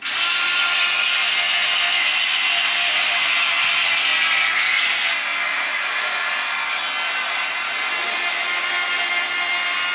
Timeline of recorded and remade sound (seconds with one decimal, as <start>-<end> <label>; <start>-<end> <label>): 0.0-5.5 recorded; 5.5-6.3 remade; 6.3-7.3 recorded; 7.3-7.9 remade; 7.9-9.9 recorded